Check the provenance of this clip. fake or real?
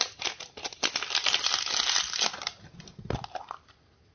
real